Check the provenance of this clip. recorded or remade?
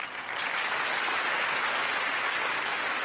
recorded